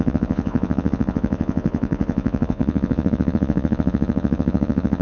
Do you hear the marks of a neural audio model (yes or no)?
yes